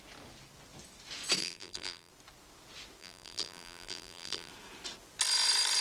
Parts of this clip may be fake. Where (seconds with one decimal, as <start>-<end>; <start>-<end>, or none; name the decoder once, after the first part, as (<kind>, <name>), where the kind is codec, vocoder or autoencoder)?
1.4-2.1 (vocoder, BigVGAN v2); 3.0-4.5